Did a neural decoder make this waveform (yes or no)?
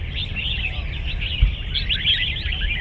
no